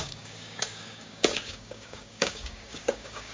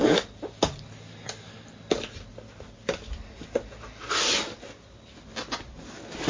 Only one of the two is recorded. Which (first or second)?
second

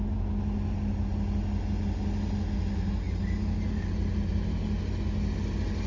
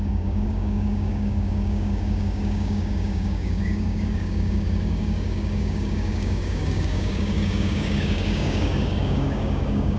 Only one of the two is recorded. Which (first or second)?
first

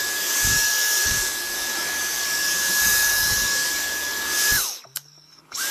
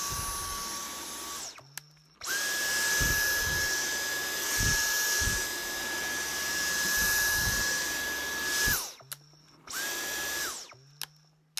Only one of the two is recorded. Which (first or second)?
second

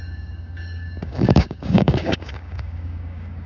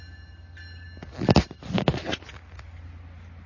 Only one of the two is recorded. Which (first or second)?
second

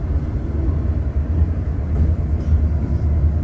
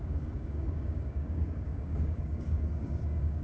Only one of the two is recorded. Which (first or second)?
first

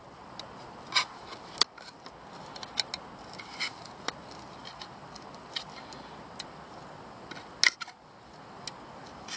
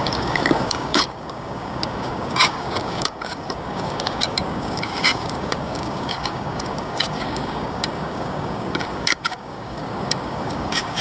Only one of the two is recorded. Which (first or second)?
first